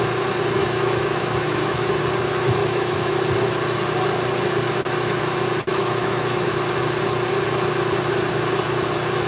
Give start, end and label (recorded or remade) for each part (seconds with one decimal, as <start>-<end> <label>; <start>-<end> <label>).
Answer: 0.0-0.6 recorded; 0.6-2.0 remade; 2.0-2.6 recorded; 2.6-3.2 remade; 3.2-5.7 recorded; 5.7-6.5 remade; 6.5-9.3 recorded